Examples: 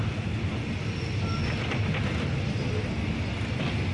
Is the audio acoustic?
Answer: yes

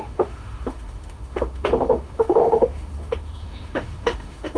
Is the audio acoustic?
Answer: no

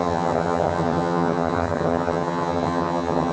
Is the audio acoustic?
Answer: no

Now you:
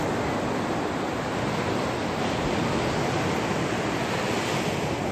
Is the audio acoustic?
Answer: yes